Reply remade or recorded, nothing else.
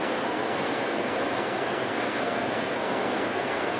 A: remade